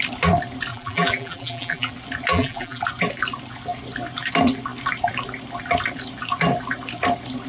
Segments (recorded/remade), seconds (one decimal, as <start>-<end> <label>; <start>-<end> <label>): 0.0-0.7 recorded; 0.7-1.9 remade; 1.9-2.3 recorded; 2.3-2.8 remade; 2.8-7.5 recorded